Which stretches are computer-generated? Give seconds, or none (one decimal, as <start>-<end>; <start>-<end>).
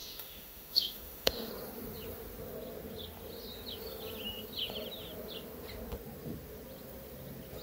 0.0-1.5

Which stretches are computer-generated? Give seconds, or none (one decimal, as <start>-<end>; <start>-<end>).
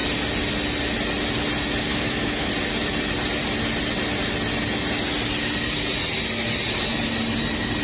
1.9-2.5